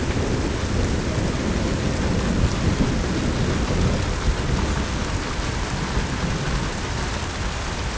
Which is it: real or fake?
real